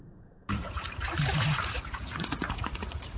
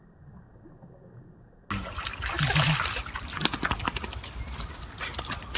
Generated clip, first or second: first